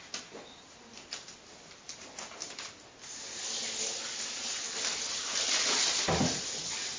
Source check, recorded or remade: recorded